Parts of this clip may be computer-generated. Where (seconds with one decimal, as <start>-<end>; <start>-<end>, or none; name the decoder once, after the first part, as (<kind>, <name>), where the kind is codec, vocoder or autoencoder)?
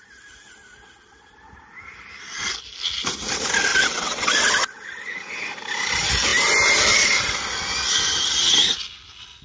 3.7-4.3 (vocoder, WaveNeXt)